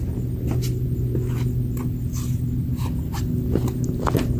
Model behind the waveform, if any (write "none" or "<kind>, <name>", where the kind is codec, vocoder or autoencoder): none